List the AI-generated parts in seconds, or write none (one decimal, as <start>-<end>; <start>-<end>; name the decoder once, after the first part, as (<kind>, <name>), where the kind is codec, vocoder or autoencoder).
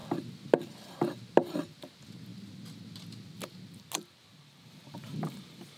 4.2-5.8 (vocoder, BigVGAN v2)